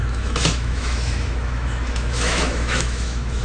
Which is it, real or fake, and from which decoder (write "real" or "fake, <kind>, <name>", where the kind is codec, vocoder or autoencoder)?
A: fake, autoencoder, DAC-VAE